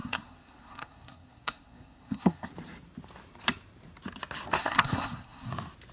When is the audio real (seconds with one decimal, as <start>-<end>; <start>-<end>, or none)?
2.5-4.6; 5.5-5.9